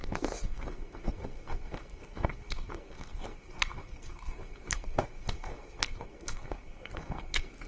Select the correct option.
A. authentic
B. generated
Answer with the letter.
B